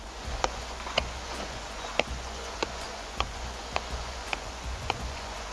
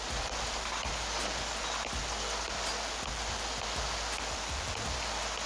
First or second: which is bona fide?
second